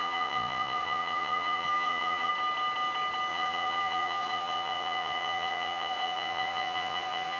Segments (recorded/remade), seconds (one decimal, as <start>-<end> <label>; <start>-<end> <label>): 0.0-2.3 remade; 2.3-3.3 recorded; 3.3-7.4 remade